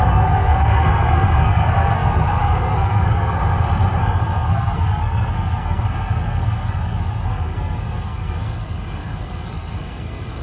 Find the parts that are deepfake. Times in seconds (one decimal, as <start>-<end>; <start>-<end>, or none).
0.0-3.4; 4.0-10.4